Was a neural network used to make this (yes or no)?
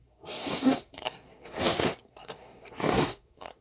yes